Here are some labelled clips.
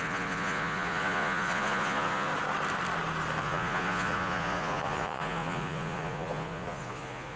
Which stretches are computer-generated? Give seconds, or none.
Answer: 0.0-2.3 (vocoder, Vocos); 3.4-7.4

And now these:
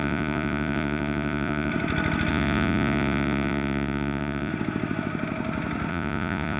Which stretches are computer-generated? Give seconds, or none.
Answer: 0.0-1.7 (vocoder, Vocos); 2.3-4.5; 5.9-6.6